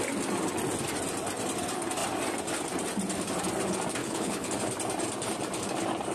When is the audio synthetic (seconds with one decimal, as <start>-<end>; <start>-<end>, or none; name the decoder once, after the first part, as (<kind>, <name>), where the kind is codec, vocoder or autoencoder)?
4.0-4.5 (codec, HILCodec)

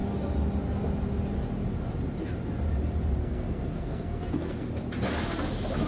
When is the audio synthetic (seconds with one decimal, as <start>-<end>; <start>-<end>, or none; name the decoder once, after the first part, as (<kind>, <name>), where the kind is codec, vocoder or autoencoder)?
3.2-4.7 (codec, SNAC)

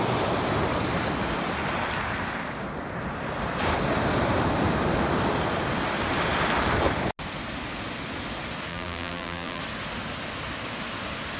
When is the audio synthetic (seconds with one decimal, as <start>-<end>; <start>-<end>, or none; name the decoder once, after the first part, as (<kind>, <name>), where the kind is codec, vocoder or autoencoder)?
8.7-9.6 (vocoder, BigVGAN v2)

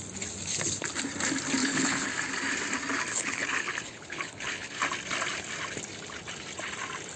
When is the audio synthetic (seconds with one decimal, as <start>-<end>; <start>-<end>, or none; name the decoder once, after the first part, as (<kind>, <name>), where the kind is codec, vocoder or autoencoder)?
1.6-2.1 (codec, HILCodec); 3.1-4.8

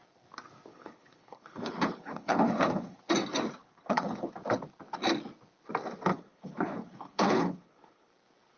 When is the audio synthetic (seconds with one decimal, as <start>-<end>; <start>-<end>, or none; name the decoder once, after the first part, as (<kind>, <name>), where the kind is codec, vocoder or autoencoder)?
0.7-3.0 (codec, HILCodec); 3.6-4.3; 6.1-8.1

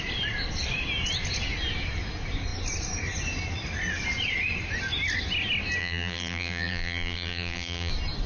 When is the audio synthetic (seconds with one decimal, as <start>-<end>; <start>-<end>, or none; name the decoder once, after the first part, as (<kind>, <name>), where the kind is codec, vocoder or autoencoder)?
5.8-7.9 (vocoder, BigVGAN v2)